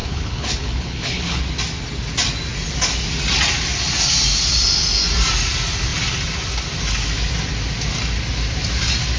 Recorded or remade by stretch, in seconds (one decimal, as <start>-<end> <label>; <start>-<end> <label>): 0.0-1.4 remade; 1.4-9.2 recorded